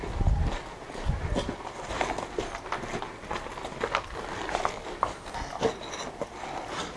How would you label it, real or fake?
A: real